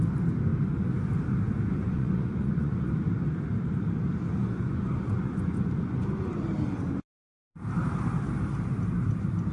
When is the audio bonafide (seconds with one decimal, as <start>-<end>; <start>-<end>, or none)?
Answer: 0.0-1.8; 2.9-4.4; 6.3-9.5